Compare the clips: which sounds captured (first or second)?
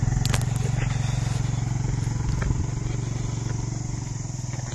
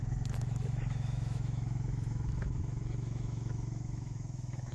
first